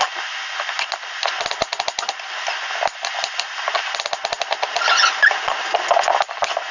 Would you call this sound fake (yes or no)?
no